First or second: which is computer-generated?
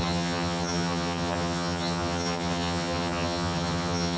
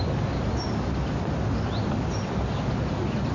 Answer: first